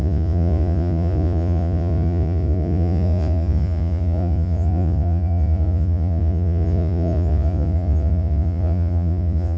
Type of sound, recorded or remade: remade